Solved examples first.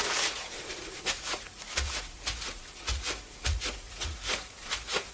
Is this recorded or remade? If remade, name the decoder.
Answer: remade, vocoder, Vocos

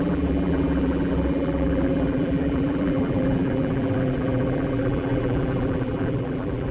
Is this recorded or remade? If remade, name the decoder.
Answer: remade, vocoder, BigVGAN v2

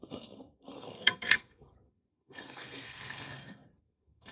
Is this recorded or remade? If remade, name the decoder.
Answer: remade, codec, SNAC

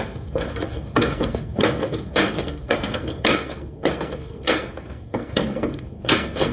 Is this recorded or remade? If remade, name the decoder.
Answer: remade, codec, SNAC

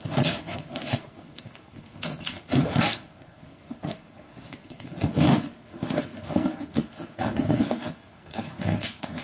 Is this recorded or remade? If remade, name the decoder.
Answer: remade, codec, SNAC